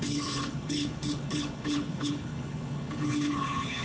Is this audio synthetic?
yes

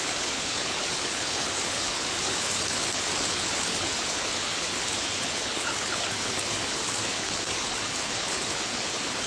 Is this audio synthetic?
yes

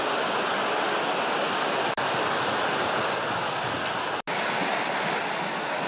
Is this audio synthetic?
no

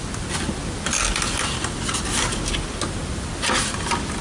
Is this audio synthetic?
no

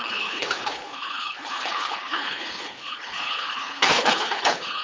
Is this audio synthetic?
yes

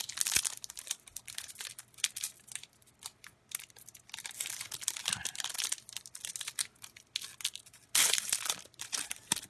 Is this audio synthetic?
no